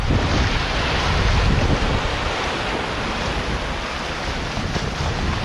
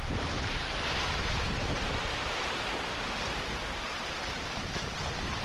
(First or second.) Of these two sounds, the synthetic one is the second